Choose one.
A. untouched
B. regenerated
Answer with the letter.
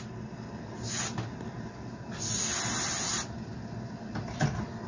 A